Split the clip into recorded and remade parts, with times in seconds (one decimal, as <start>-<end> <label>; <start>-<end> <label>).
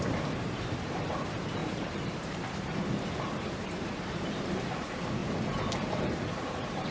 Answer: 0.0-5.2 remade; 5.2-6.3 recorded; 6.3-6.9 remade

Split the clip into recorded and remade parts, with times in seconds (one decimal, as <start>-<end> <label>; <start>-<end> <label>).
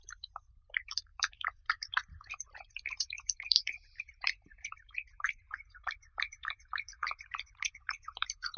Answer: 0.0-8.6 remade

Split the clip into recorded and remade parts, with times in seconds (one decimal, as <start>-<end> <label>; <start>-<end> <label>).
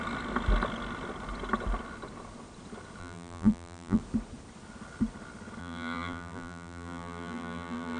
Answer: 0.0-3.0 recorded; 3.0-4.0 remade; 4.0-5.6 recorded; 5.6-8.0 remade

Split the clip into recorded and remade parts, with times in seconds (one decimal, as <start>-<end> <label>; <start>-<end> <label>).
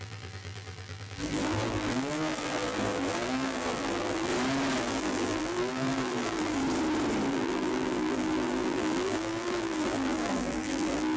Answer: 0.0-4.3 remade; 4.3-4.8 recorded; 4.8-6.6 remade; 6.6-7.3 recorded; 7.3-11.2 remade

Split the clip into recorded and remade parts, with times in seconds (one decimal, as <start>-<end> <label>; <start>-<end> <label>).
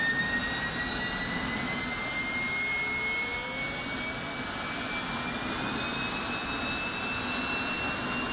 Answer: 0.0-8.3 recorded